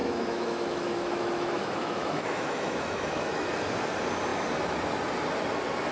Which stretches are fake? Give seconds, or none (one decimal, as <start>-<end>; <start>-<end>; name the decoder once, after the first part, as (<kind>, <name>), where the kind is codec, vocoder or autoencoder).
0.0-3.5 (autoencoder, DAC-VAE)